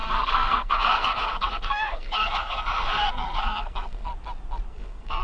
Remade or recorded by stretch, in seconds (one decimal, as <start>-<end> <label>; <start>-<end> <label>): 0.0-4.1 remade; 4.1-4.7 recorded; 4.7-5.2 remade